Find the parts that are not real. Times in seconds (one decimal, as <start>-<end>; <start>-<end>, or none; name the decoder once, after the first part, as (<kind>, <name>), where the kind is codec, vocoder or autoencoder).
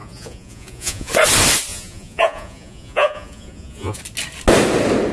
0.0-1.1 (vocoder, Vocos); 1.7-4.0